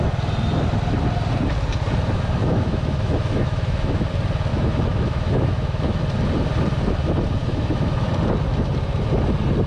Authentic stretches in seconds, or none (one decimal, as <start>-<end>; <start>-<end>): 0.0-2.4; 4.1-4.5; 6.0-7.4; 8.1-9.7